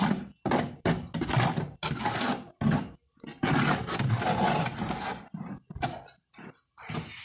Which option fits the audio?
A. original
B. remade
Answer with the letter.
A